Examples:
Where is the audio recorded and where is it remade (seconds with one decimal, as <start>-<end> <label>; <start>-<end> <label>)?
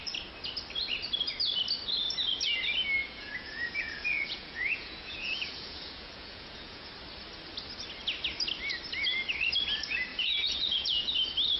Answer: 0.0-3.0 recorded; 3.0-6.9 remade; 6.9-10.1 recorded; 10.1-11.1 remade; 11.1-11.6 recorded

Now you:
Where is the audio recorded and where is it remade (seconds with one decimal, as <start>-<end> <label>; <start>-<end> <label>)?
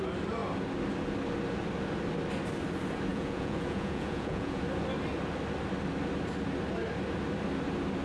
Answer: 0.0-3.1 recorded; 3.1-4.6 remade; 4.6-8.0 recorded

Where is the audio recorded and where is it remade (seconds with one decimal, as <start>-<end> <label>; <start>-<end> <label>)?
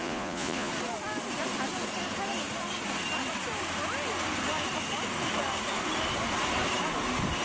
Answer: 0.0-0.7 remade; 0.7-7.4 recorded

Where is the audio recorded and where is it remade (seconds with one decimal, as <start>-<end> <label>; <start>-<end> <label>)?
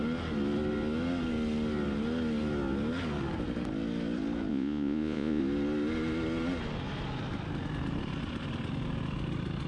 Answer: 0.0-4.5 recorded; 4.5-5.4 remade; 5.4-9.7 recorded